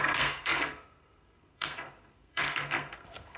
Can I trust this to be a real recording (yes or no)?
no